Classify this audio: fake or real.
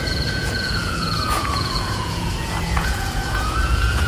fake